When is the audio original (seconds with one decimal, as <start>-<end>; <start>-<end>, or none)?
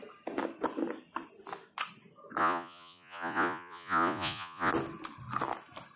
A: 0.0-2.4; 4.7-6.0